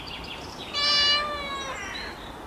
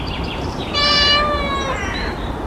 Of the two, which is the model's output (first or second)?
second